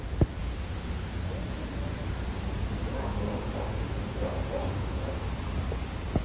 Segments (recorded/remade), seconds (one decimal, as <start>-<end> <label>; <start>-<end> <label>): 0.0-0.4 recorded; 0.4-1.1 remade; 1.1-3.0 recorded; 3.0-5.3 remade; 5.3-6.2 recorded